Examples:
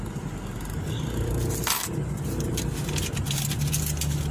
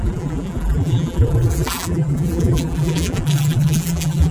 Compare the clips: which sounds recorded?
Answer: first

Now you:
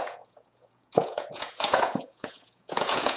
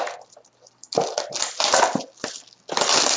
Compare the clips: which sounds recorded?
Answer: second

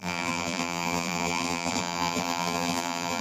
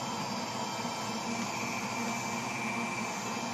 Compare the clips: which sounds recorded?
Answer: second